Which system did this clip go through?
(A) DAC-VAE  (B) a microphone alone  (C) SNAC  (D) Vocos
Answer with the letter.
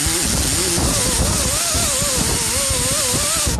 B